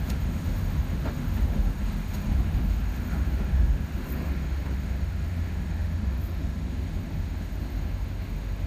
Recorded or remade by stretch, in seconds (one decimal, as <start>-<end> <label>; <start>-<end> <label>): 0.0-8.7 remade